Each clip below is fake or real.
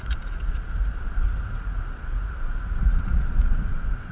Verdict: fake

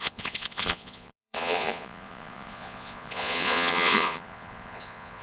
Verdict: fake